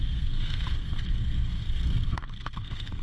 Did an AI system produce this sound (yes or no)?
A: yes